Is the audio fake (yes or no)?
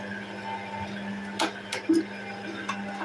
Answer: no